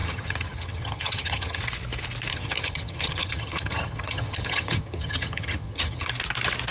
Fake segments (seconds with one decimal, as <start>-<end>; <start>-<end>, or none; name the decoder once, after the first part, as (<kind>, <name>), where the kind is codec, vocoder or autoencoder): 0.0-1.6 (vocoder, HiFi-GAN); 2.3-6.1